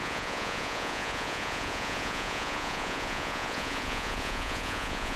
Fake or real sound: fake